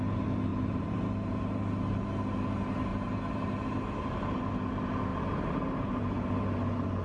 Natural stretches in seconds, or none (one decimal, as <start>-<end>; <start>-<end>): 0.0-0.5; 1.5-2.9; 4.4-5.1; 6.0-7.0